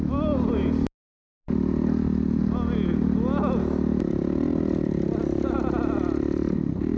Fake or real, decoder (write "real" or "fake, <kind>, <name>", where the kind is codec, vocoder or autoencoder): real